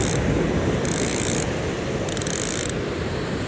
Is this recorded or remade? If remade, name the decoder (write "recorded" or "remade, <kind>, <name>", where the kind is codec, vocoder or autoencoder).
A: recorded